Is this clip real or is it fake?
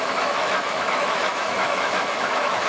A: fake